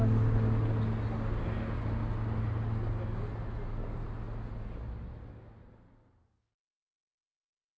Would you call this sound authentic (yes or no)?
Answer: yes